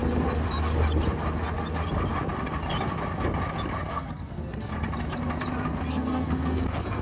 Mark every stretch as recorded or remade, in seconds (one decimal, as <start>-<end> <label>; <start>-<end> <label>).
0.0-3.9 recorded; 3.9-4.7 remade; 4.7-5.9 recorded; 5.9-7.0 remade